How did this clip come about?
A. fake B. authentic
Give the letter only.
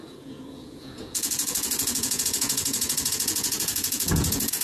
A